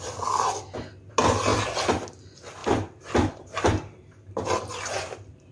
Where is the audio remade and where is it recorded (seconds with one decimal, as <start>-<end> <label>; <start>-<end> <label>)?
0.0-5.5 recorded